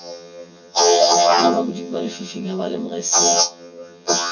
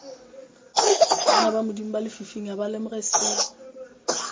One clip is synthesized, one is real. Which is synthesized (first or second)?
first